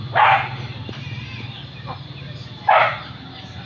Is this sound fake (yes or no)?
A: no